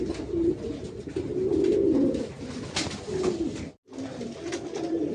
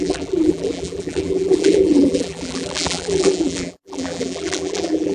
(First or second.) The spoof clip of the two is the second